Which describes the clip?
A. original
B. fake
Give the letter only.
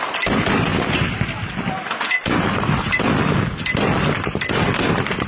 A